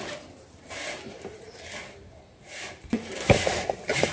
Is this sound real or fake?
fake